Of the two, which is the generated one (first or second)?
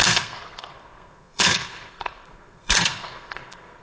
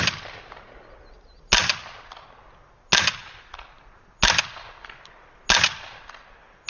first